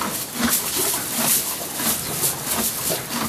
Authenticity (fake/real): real